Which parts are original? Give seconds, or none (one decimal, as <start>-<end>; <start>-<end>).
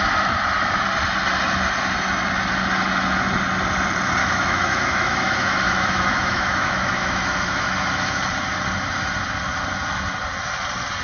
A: 0.0-4.2; 8.2-11.0